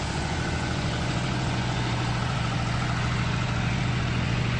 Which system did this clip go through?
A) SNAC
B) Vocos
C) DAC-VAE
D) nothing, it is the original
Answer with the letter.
B